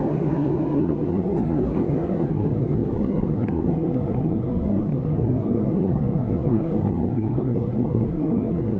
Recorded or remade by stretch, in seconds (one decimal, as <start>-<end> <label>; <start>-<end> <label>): 0.0-8.8 remade